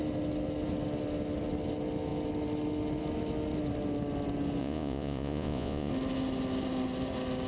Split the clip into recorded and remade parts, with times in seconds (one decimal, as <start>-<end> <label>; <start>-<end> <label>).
0.0-4.6 recorded; 4.6-5.9 remade; 5.9-7.5 recorded